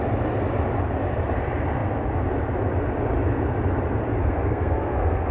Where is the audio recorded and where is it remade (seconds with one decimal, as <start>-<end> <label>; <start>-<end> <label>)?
0.0-4.2 recorded; 4.2-5.3 remade

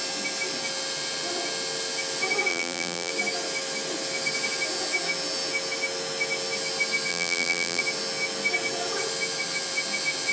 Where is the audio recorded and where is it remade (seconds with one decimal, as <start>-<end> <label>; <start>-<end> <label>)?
0.0-2.5 recorded; 2.5-3.1 remade; 3.1-7.1 recorded; 7.1-7.8 remade; 7.8-10.3 recorded